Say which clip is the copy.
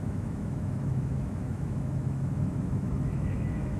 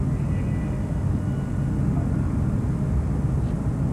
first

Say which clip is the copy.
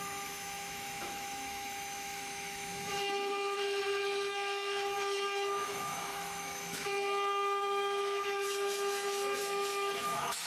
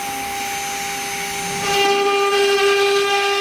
first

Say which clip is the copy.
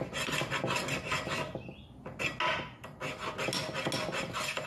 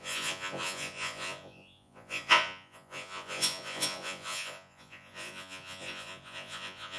second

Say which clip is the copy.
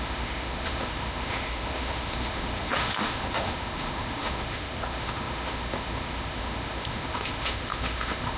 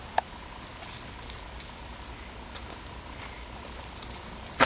first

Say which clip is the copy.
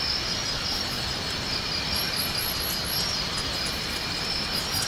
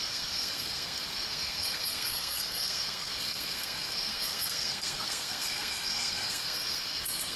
second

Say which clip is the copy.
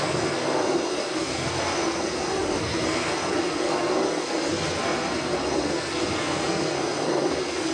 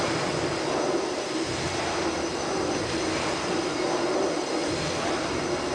first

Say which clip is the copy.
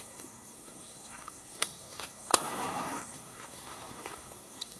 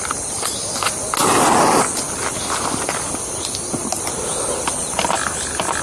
first